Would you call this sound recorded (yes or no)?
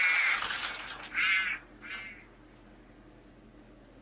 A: yes